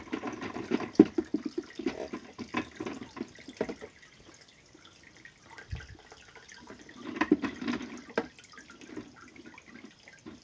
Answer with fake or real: real